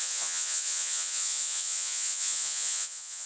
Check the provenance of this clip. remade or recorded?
remade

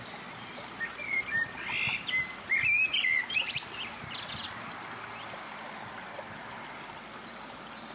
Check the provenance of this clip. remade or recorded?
recorded